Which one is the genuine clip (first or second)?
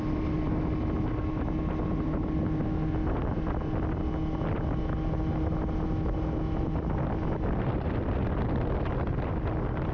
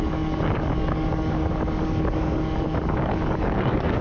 first